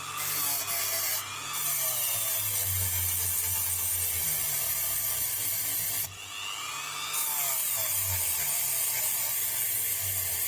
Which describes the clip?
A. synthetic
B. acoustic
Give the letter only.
B